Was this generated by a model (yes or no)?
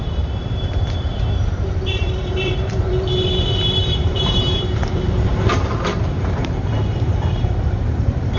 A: yes